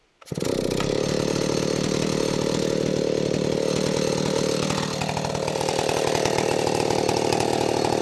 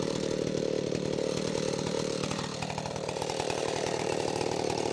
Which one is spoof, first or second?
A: second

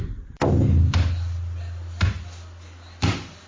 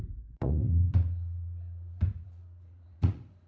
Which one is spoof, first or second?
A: second